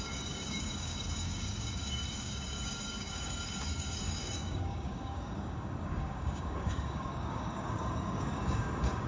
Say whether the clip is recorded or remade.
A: remade